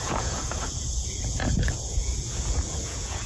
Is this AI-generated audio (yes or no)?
yes